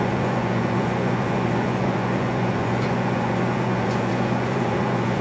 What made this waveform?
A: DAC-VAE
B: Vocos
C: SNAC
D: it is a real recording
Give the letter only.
B